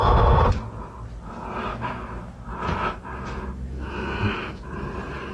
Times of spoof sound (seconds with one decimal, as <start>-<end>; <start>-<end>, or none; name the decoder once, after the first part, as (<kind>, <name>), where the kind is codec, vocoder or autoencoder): 1.7-4.6 (autoencoder, DAC-VAE)